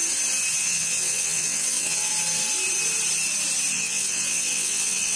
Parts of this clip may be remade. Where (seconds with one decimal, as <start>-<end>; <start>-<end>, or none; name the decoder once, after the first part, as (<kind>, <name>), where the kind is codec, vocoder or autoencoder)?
0.6-2.1 (vocoder, WaveNeXt); 3.7-5.2